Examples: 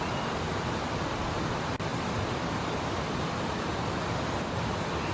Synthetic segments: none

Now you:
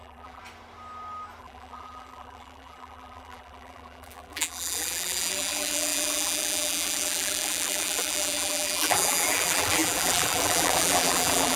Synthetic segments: 0.0-0.4; 1.4-11.6